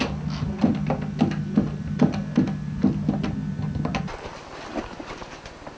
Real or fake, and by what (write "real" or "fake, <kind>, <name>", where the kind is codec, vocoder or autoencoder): real